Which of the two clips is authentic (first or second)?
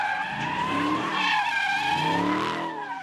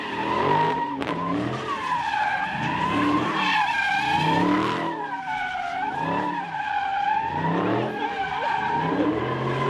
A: first